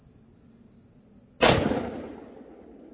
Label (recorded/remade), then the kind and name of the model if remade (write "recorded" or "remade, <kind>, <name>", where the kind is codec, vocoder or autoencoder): recorded